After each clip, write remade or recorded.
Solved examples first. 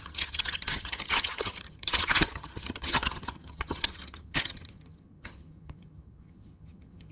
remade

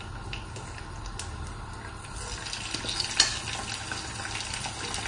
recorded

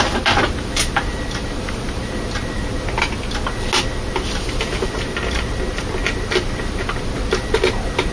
recorded